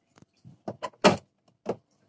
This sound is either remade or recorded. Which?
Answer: recorded